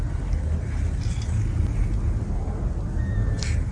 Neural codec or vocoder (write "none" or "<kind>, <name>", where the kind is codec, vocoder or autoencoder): none